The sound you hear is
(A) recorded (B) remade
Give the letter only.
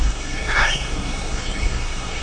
B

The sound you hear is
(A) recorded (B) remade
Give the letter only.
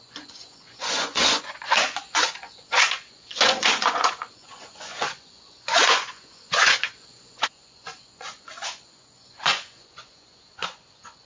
B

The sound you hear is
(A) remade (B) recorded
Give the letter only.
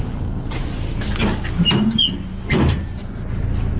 B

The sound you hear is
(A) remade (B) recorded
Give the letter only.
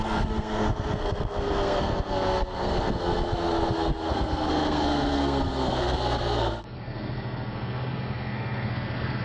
A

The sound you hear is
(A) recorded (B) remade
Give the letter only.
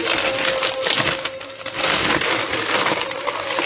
A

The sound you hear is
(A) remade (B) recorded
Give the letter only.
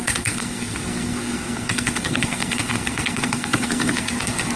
A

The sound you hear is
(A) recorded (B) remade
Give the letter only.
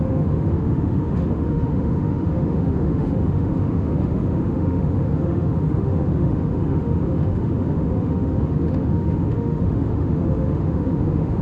B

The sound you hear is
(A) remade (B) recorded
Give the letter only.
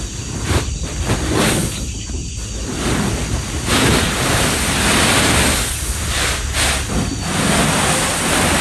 B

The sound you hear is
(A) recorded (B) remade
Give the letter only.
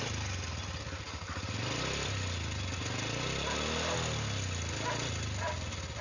A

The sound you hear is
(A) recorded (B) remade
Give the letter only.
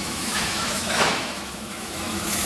B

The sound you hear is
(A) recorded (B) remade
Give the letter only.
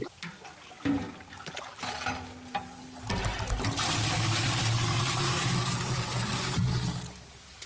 A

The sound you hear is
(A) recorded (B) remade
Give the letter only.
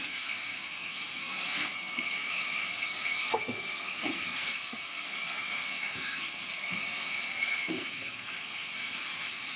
B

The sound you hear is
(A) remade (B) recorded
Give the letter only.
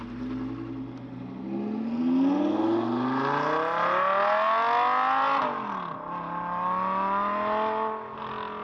B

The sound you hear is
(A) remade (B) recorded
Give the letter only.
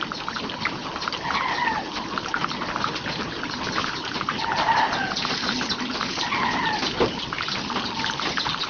B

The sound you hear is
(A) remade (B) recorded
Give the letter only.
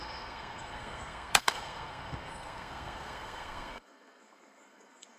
A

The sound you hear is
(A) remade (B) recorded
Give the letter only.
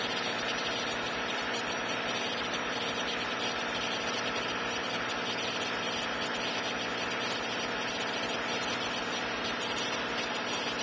B